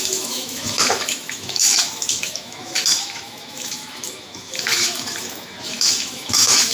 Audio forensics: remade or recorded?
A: remade